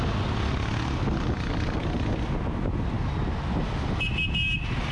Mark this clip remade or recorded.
recorded